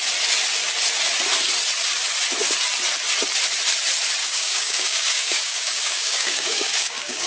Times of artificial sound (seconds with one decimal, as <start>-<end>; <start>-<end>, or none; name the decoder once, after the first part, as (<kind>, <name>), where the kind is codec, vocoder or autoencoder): 4.2-7.3 (codec, DAC)